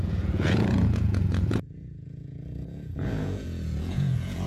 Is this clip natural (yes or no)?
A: no